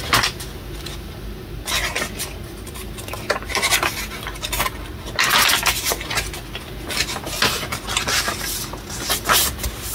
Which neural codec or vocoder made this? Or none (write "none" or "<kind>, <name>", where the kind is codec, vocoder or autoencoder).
none